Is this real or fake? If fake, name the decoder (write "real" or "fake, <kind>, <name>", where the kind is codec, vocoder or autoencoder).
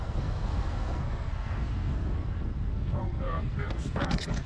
fake, codec, SNAC